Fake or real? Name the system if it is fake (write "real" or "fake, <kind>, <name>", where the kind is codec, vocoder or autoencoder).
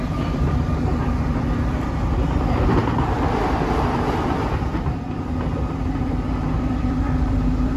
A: fake, vocoder, BigVGAN v2